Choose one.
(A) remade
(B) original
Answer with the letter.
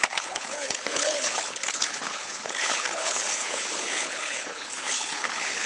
A